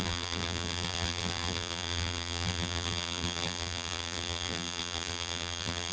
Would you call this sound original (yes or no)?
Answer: no